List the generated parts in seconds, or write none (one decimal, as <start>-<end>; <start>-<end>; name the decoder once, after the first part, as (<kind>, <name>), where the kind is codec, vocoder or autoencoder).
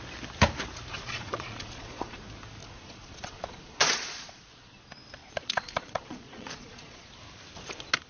0.9-2.2 (vocoder, Vocos); 2.6-4.8; 5.2-7.1